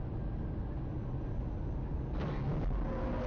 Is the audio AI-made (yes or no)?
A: no